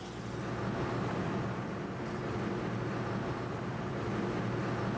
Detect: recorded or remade recorded